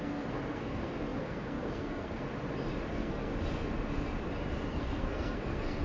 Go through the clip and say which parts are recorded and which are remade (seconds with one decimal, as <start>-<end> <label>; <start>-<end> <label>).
0.0-2.3 remade; 2.3-2.9 recorded; 2.9-3.3 remade; 3.3-4.7 recorded; 4.7-5.8 remade